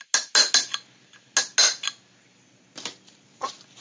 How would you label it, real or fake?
real